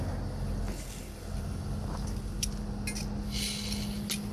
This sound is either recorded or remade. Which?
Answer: recorded